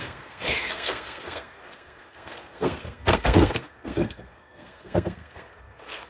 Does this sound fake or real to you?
fake